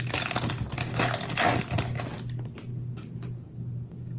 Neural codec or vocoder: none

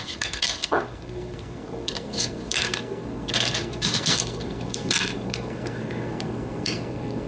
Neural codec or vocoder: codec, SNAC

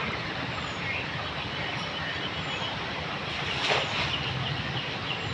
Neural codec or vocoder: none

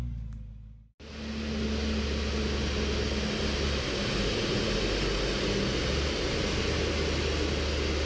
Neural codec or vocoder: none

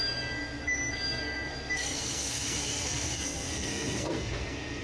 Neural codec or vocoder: codec, SNAC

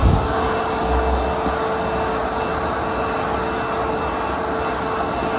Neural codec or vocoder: none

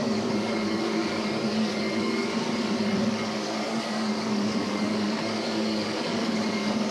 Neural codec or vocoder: codec, DAC